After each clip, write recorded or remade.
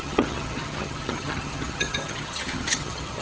remade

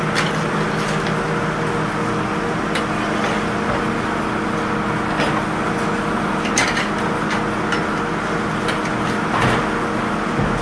recorded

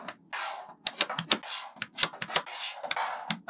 recorded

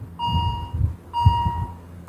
recorded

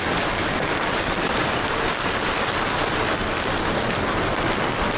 recorded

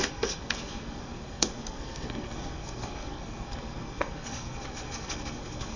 remade